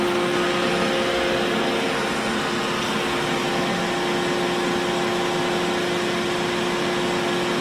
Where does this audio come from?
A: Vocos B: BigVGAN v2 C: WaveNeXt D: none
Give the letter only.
D